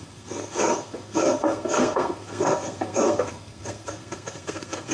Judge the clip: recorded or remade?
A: remade